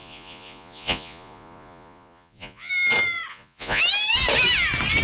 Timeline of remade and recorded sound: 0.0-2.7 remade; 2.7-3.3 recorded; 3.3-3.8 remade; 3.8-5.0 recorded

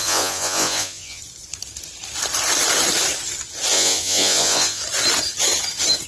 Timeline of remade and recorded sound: 0.0-1.2 remade; 1.2-3.7 recorded; 3.7-4.8 remade; 4.8-6.1 recorded